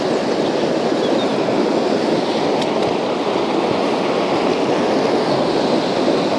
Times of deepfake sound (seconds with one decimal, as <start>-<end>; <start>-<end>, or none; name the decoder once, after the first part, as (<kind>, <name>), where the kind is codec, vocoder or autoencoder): none